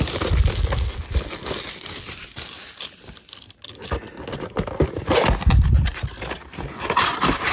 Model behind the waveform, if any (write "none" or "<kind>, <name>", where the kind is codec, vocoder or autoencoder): none